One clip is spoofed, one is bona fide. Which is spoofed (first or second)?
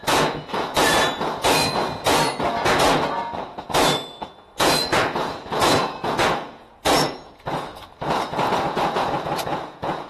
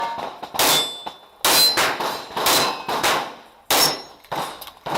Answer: first